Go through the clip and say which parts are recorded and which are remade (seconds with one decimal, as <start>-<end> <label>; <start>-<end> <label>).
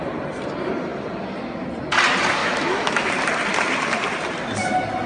0.0-2.4 recorded; 2.4-3.1 remade; 3.1-5.1 recorded